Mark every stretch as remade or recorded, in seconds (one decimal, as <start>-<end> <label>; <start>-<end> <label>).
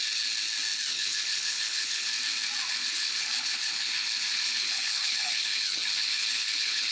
0.0-0.9 recorded; 0.9-2.1 remade; 2.1-2.7 recorded; 2.7-6.9 remade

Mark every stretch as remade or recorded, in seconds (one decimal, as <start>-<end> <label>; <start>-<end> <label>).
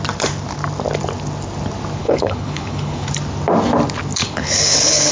0.0-2.0 recorded; 2.0-3.1 remade; 3.1-4.2 recorded; 4.2-5.1 remade